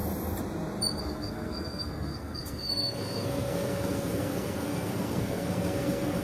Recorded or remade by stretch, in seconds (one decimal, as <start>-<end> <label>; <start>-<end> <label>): 0.0-1.0 recorded; 1.0-6.2 remade